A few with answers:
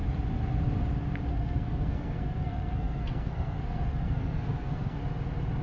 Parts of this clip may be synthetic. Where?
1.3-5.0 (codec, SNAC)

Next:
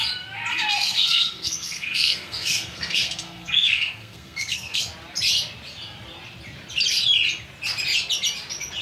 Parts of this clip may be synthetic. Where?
0.5-4.9 (codec, SNAC)

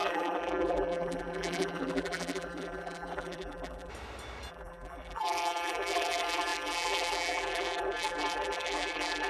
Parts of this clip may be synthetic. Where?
0.0-3.9 (vocoder, BigVGAN v2); 4.5-9.3